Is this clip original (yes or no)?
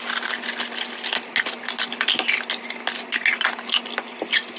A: yes